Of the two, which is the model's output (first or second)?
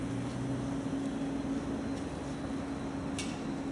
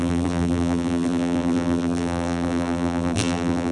second